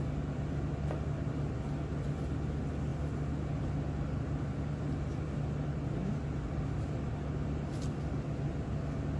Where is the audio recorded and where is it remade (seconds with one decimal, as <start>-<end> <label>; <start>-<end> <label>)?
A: 0.0-9.2 recorded